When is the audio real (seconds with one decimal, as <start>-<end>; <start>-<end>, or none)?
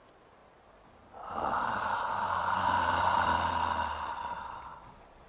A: 0.0-4.1